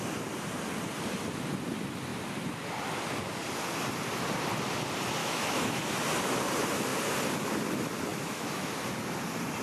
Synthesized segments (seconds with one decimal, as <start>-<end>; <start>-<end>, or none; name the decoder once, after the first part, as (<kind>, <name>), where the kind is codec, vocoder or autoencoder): 5.2-5.8 (autoencoder, DAC-VAE); 8.1-8.7

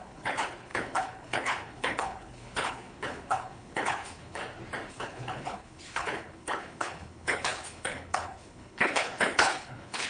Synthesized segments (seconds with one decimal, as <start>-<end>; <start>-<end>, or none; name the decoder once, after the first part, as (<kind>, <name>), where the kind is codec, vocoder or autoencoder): 0.0-4.4 (codec, HILCodec); 4.9-10.1

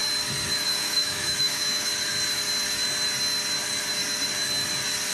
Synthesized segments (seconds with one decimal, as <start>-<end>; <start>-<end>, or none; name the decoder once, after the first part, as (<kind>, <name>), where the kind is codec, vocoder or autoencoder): 0.8-1.9 (autoencoder, DAC-VAE)

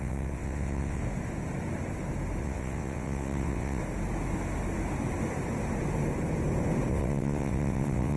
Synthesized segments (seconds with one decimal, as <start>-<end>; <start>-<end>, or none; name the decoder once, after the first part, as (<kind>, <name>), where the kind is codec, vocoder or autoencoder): 0.0-1.0 (vocoder, WaveNeXt); 2.4-3.8; 6.9-8.2

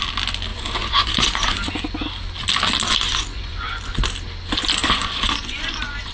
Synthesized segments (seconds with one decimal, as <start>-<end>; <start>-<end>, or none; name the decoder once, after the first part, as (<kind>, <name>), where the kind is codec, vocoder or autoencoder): 0.5-1.7 (vocoder, Vocos); 3.1-3.8; 4.8-6.1